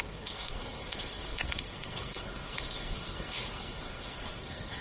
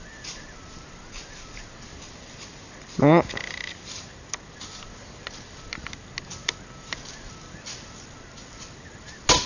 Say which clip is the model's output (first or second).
first